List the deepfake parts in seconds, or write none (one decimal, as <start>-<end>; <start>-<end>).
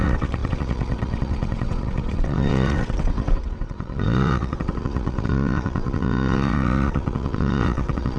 0.0-8.2